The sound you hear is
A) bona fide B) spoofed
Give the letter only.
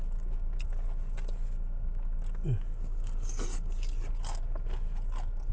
A